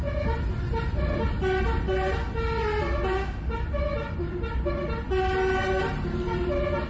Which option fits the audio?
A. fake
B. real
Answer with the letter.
B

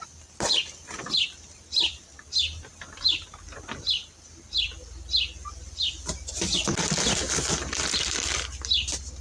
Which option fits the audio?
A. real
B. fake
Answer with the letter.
A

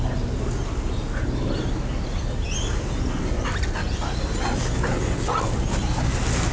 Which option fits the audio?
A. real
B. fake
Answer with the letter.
A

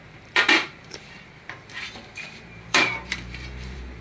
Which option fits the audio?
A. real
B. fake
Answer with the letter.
B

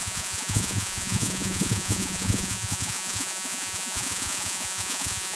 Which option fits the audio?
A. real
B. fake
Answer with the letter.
B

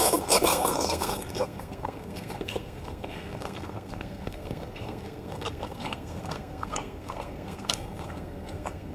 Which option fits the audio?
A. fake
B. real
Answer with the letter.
A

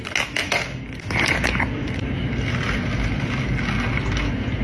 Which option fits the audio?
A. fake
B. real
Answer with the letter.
B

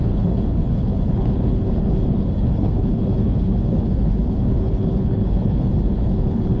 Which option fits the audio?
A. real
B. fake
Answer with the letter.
B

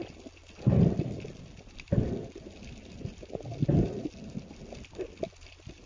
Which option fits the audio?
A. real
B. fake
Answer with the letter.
A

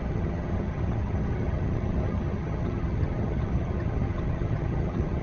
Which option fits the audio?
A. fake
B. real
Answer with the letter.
A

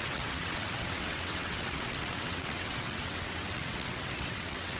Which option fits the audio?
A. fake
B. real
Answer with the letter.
A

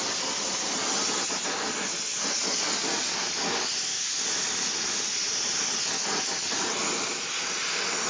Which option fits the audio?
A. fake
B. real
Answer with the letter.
B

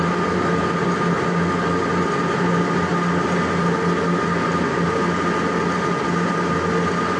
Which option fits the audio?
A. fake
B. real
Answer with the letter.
B